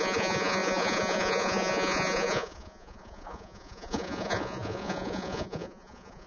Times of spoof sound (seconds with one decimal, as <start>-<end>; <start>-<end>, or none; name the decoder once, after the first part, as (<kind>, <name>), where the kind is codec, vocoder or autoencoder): 0.0-6.3 (vocoder, Vocos)